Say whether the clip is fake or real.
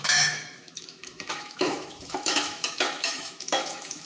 fake